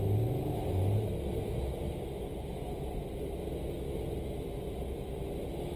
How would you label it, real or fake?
real